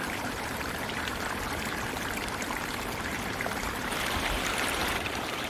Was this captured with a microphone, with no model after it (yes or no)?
no